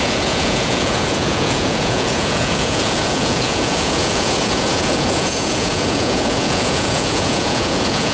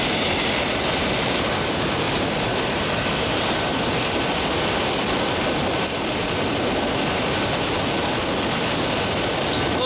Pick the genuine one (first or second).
second